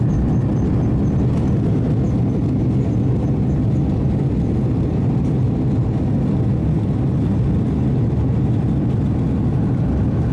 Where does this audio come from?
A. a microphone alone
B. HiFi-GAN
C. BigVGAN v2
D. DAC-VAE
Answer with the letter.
A